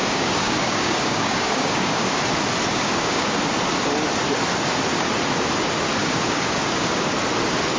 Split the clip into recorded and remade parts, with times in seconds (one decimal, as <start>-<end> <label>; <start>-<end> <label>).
0.0-2.2 remade; 2.2-2.7 recorded; 2.7-3.4 remade; 3.4-6.0 recorded; 6.0-7.1 remade; 7.1-7.8 recorded